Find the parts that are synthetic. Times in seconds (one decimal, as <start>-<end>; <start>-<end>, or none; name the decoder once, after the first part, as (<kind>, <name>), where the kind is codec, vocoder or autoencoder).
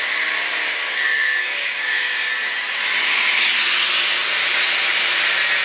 0.7-2.3 (codec, DAC)